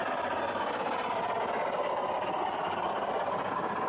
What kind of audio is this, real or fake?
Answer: real